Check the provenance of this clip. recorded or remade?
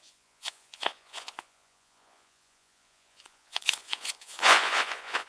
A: remade